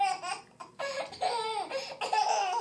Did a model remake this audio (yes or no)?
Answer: no